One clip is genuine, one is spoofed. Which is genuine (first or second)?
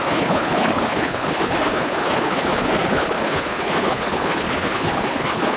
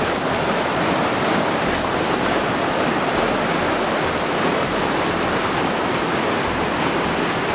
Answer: second